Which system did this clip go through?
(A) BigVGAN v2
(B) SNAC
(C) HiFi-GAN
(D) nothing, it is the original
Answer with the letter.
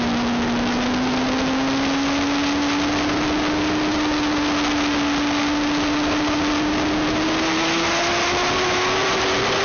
D